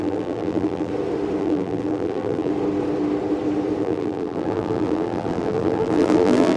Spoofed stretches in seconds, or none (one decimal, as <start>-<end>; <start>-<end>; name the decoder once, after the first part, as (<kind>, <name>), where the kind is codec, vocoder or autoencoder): 0.0-0.9 (vocoder, BigVGAN v2); 1.4-2.5; 3.8-6.6